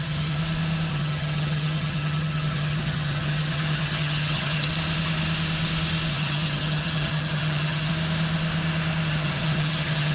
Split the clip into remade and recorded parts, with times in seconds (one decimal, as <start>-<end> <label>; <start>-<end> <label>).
0.0-0.4 remade; 0.4-0.9 recorded; 0.9-4.7 remade; 4.7-6.1 recorded; 6.1-7.9 remade; 7.9-9.1 recorded; 9.1-10.1 remade